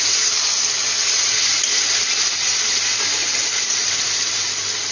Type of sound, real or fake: real